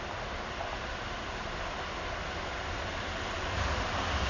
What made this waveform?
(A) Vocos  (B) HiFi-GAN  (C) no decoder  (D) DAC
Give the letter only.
C